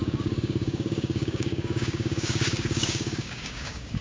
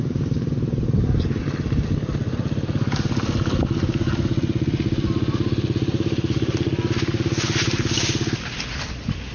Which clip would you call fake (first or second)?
first